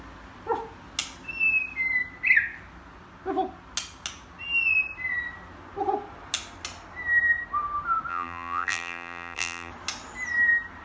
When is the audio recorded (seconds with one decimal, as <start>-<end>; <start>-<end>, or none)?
0.0-8.1; 9.7-10.8